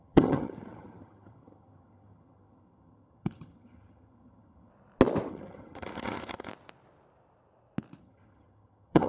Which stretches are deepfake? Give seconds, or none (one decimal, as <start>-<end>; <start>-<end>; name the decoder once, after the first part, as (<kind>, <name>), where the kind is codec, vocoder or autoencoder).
0.0-4.7 (vocoder, HiFi-GAN); 5.3-6.5; 8.0-9.1